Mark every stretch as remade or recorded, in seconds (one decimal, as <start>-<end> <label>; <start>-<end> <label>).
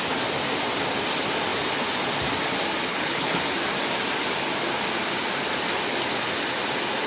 0.0-2.9 recorded; 2.9-3.4 remade; 3.4-7.1 recorded